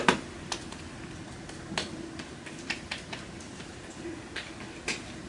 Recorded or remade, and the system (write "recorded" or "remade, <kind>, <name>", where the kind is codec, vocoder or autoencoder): recorded